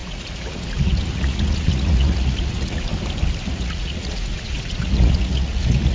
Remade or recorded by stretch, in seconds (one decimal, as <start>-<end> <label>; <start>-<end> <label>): 0.0-2.9 remade; 2.9-3.5 recorded; 3.5-5.9 remade